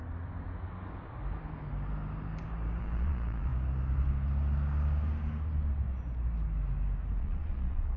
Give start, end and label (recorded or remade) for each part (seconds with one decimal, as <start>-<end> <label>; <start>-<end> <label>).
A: 0.0-2.8 recorded; 2.8-3.5 remade; 3.5-7.2 recorded; 7.2-8.0 remade